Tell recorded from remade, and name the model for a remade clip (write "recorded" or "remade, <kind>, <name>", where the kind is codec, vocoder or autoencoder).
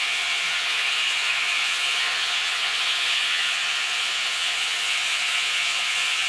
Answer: remade, vocoder, Vocos